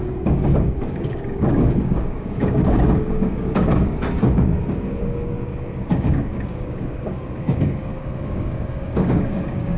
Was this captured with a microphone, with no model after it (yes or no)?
no